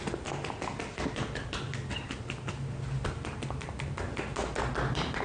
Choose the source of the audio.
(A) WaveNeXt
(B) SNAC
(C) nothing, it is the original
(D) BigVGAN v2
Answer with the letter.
C